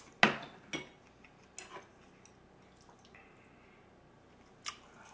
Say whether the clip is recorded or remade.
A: recorded